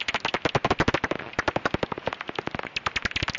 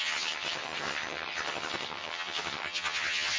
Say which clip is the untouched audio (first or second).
first